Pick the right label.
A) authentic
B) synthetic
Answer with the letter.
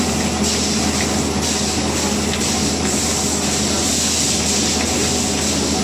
A